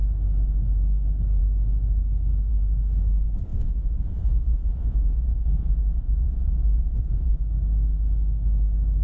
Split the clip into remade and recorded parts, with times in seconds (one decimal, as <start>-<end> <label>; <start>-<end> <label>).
0.0-3.5 recorded; 3.5-7.4 remade; 7.4-9.0 recorded